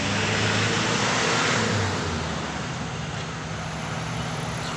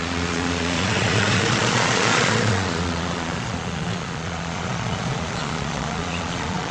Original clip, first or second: first